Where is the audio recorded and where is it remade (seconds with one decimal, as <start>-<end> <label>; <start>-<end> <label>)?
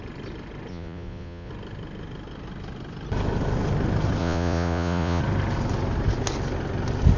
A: 0.0-0.7 recorded; 0.7-1.5 remade; 1.5-4.2 recorded; 4.2-5.2 remade; 5.2-7.2 recorded